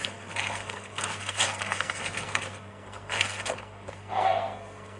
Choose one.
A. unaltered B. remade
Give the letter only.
B